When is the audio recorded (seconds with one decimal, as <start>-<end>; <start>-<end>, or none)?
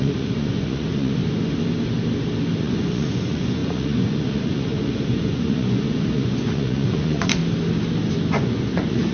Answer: 1.2-2.6; 7.4-8.3